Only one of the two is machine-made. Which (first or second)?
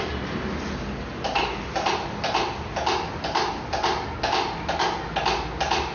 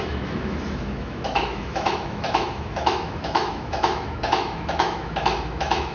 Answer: second